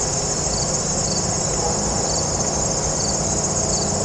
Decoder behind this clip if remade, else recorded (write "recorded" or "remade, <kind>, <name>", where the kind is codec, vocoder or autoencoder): recorded